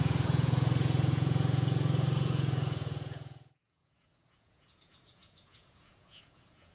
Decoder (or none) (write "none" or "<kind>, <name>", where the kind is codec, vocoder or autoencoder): vocoder, Vocos